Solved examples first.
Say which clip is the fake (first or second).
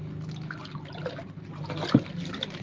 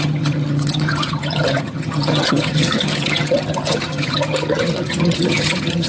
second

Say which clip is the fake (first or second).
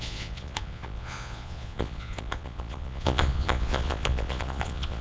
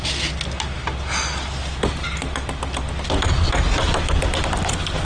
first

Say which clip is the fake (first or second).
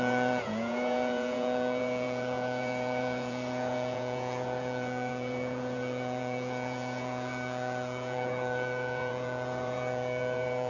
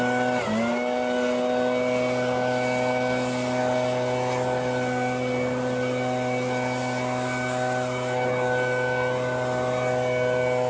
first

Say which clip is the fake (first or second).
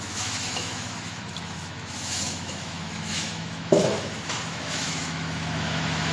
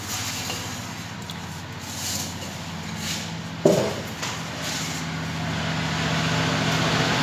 first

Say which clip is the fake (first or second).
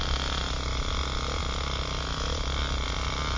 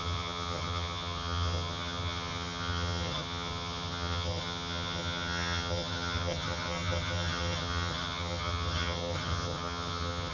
second